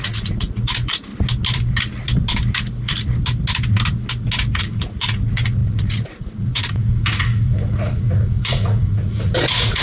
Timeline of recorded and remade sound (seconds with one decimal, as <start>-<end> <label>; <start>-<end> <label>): 0.0-1.1 remade; 1.1-4.6 recorded; 4.6-9.8 remade